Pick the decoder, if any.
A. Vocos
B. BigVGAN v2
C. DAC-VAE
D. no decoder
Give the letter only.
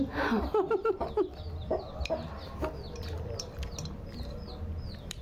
D